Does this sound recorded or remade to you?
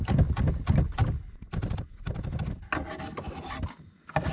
recorded